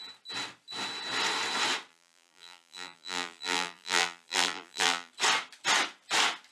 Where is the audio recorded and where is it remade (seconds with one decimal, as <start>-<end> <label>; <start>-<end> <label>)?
0.0-1.9 recorded; 1.9-5.1 remade; 5.1-6.5 recorded